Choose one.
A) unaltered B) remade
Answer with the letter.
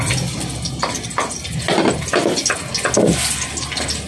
A